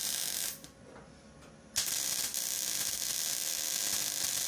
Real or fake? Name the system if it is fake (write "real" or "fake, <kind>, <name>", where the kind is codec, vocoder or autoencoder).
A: real